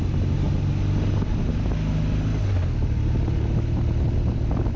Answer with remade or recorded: recorded